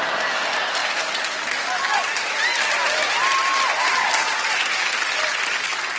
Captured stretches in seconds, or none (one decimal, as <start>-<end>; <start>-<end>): 0.0-6.0